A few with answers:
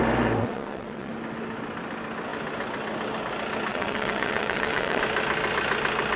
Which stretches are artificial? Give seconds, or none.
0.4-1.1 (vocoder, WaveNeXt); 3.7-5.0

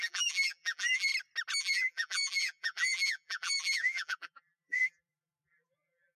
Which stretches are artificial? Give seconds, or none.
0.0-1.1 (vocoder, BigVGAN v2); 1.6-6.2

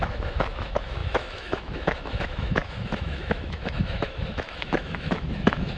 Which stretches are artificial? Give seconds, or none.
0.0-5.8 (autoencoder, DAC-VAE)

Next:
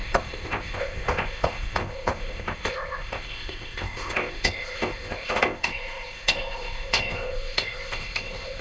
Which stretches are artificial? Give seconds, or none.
0.0-8.6 (codec, ZipCodec)